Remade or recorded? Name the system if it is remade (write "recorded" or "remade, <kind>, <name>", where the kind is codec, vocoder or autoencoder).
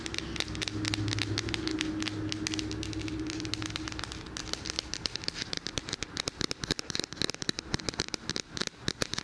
recorded